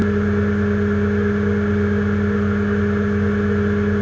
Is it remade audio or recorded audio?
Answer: recorded